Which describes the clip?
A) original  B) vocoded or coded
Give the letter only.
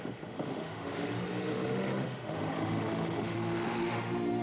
B